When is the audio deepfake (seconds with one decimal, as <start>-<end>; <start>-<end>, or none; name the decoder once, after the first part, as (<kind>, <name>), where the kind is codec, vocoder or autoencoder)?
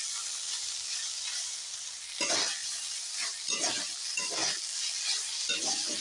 2.6-3.8 (vocoder, BigVGAN v2)